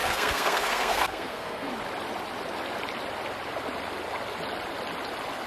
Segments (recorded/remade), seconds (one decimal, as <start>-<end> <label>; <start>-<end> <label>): 0.0-1.7 remade; 1.7-5.5 recorded